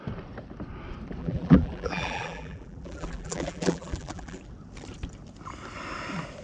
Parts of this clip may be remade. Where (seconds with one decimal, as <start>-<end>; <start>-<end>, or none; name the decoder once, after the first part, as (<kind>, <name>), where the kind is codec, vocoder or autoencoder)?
1.2-4.4 (vocoder, BigVGAN v2)